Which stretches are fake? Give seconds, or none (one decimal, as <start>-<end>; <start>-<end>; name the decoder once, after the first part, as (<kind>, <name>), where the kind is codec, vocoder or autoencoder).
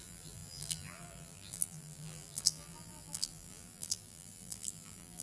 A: 0.0-5.2 (vocoder, BigVGAN v2)